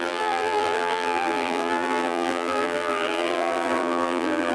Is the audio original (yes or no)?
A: no